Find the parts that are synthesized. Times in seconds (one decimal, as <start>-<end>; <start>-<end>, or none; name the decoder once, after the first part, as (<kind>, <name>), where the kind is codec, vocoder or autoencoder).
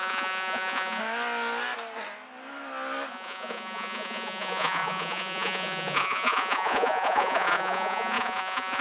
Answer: 0.0-1.0 (vocoder, Vocos); 3.1-8.8